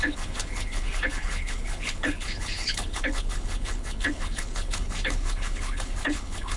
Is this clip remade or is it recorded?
remade